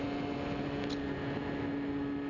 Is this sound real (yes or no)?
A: yes